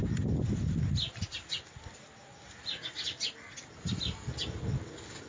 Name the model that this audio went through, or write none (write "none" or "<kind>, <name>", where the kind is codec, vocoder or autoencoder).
none